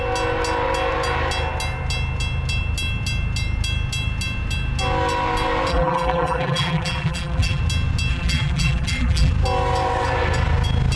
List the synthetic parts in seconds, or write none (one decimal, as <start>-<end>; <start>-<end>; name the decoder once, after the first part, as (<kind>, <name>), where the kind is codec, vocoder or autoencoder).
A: 5.7-7.6 (vocoder, BigVGAN v2); 8.1-9.3